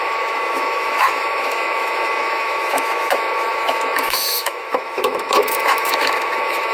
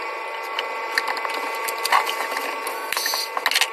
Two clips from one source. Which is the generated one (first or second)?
first